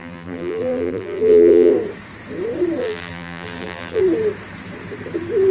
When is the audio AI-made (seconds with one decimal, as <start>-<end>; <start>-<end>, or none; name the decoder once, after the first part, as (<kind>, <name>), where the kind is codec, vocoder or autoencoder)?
0.0-1.7 (vocoder, BigVGAN v2); 2.8-4.0

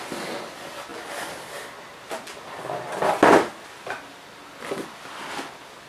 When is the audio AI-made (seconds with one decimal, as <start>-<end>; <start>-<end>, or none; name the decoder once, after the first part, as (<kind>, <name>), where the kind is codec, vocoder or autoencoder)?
none

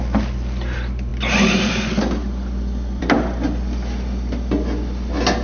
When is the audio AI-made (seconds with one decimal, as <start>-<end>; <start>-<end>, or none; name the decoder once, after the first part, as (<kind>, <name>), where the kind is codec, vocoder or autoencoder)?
none

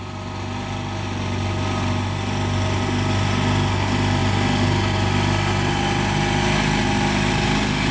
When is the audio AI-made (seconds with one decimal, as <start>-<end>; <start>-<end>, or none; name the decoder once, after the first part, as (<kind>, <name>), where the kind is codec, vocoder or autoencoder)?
none

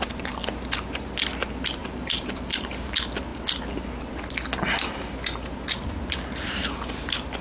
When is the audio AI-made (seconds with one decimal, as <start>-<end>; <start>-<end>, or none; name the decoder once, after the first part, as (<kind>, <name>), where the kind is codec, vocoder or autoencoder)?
1.8-2.4 (vocoder, BigVGAN v2)

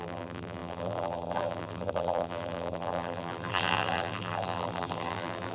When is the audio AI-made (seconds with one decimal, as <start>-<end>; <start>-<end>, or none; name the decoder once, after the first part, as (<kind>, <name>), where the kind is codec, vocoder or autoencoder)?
0.0-5.5 (vocoder, BigVGAN v2)

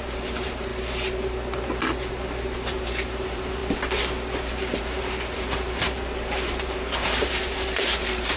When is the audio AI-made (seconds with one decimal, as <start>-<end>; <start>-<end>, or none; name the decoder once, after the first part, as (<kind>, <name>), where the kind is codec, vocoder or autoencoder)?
0.0-0.7 (vocoder, BigVGAN v2); 2.1-3.6; 4.5-8.4

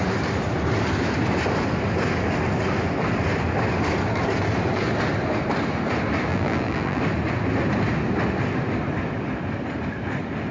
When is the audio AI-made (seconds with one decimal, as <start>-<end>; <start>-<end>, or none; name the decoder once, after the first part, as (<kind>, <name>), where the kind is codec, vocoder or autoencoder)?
6.3-7.0 (vocoder, BigVGAN v2)